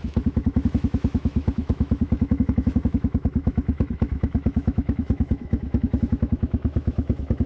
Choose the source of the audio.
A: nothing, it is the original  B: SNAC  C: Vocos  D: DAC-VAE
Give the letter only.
D